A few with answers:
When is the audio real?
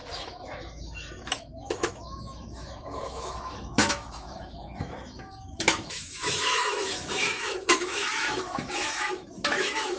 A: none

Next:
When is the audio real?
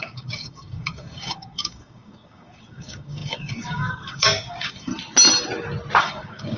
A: 4.9-6.0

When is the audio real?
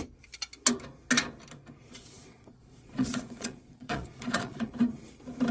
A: 0.0-1.8; 4.7-5.5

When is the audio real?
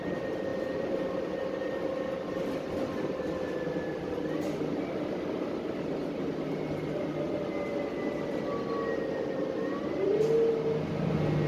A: 0.0-11.5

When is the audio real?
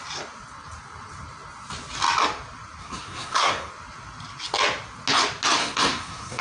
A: 0.0-2.8; 3.7-5.6